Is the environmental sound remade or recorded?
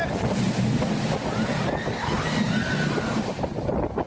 recorded